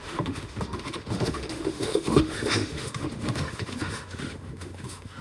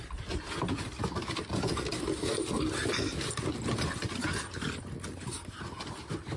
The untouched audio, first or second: second